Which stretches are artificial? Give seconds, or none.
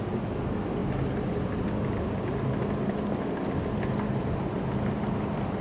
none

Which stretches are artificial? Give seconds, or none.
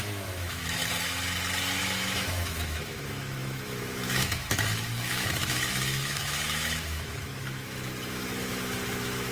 0.0-0.8 (autoencoder, DAC-VAE); 1.8-9.3